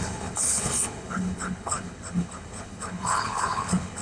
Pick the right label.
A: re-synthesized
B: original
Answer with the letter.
A